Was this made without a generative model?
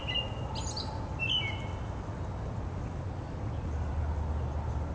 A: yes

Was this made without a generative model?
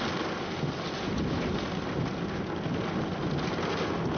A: yes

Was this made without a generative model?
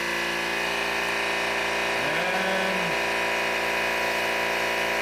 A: yes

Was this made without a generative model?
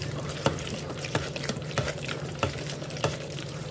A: no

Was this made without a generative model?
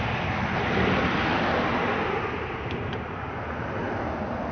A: yes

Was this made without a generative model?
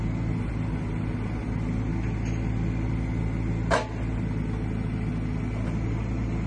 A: yes